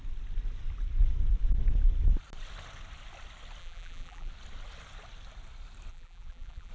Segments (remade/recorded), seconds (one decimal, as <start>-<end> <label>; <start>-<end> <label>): 0.0-3.6 recorded; 3.6-4.3 remade; 4.3-5.9 recorded; 5.9-6.7 remade